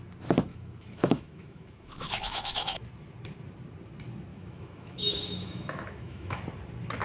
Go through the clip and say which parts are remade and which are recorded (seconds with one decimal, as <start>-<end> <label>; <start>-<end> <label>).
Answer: 0.0-0.5 recorded; 0.5-2.8 remade; 2.8-4.3 recorded; 4.3-6.4 remade; 6.4-7.0 recorded